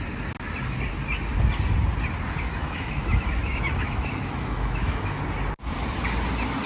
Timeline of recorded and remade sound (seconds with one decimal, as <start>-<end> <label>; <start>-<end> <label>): 0.0-2.5 recorded; 2.5-5.2 remade; 5.2-6.7 recorded